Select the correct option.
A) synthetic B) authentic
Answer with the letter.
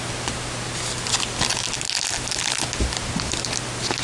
B